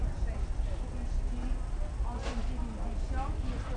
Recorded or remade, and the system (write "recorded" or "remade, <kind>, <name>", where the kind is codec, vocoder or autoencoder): recorded